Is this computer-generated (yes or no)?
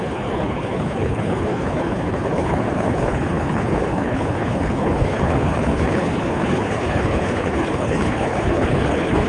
yes